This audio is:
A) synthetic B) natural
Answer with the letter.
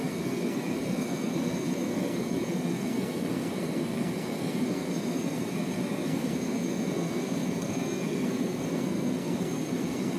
A